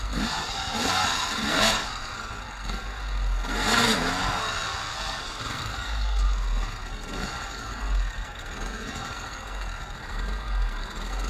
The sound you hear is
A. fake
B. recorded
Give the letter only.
A